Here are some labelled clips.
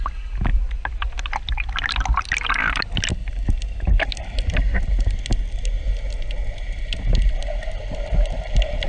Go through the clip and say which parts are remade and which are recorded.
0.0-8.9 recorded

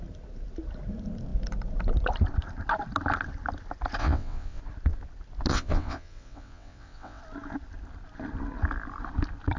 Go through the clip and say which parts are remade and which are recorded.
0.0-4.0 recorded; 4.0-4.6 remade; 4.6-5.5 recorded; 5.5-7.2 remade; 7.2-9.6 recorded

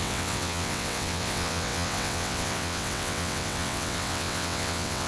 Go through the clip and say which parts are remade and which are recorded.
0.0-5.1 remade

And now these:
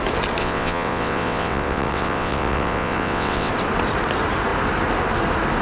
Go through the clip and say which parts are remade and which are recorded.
0.0-0.4 recorded; 0.4-3.5 remade; 3.5-5.6 recorded

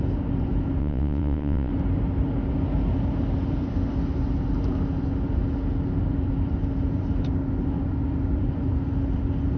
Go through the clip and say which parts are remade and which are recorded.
0.0-0.8 recorded; 0.8-1.7 remade; 1.7-9.6 recorded

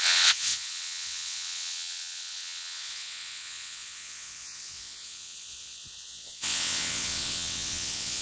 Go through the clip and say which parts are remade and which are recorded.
0.0-8.2 remade

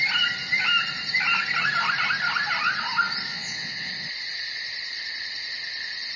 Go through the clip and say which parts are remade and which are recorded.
0.0-3.3 recorded; 3.3-3.9 remade; 3.9-6.2 recorded

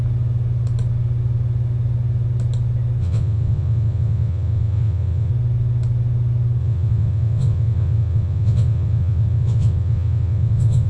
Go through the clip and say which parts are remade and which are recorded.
0.0-3.0 recorded; 3.0-5.3 remade; 5.3-6.6 recorded; 6.6-10.9 remade